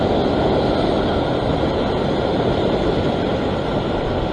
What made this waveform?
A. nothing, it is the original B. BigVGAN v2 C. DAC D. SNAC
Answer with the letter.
A